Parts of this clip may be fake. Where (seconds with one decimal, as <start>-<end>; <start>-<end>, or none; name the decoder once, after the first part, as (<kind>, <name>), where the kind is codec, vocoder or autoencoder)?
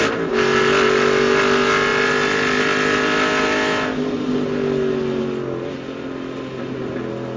none